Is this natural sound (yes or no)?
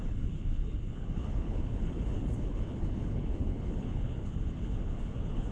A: no